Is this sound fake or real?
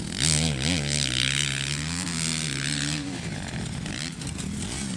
real